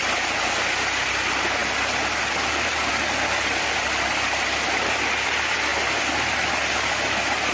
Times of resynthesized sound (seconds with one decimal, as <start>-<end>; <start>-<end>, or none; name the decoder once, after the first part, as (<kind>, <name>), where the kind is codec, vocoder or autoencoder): none